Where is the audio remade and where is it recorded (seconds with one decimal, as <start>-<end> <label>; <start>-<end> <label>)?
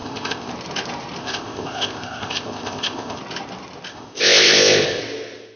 0.0-0.5 remade; 0.5-1.2 recorded; 1.2-3.2 remade; 3.2-3.9 recorded; 3.9-5.0 remade; 5.0-5.6 recorded